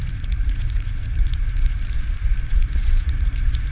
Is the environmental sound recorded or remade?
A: remade